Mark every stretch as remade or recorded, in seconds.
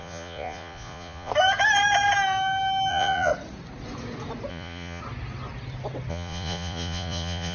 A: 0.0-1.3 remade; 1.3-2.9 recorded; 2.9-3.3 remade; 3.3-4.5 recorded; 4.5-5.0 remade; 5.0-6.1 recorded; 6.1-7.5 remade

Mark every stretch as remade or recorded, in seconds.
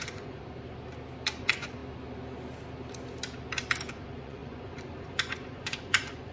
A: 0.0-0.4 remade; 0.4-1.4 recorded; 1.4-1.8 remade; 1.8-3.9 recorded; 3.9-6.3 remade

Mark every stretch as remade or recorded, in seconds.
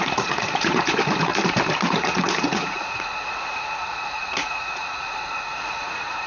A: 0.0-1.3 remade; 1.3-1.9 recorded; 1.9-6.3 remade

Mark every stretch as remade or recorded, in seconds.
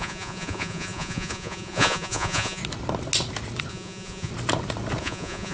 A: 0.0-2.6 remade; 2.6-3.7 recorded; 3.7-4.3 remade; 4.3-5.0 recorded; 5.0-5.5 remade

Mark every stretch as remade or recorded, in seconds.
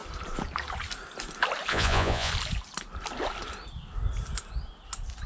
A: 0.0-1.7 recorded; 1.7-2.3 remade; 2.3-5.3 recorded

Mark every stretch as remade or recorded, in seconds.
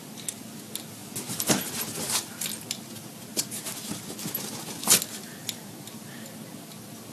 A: 0.0-7.1 recorded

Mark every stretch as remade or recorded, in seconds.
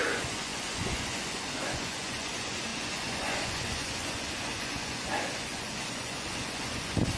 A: 0.0-7.2 remade